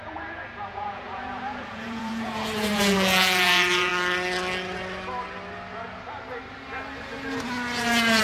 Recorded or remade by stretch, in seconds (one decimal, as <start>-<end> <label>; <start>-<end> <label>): 0.0-3.9 remade; 3.9-8.2 recorded